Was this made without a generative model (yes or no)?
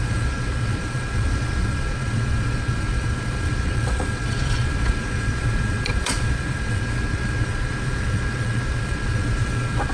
no